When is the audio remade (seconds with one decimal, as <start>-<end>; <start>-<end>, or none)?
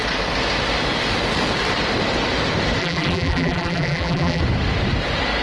2.8-4.4